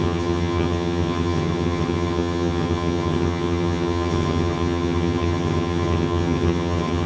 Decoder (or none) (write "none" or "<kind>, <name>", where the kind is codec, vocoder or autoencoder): vocoder, HiFi-GAN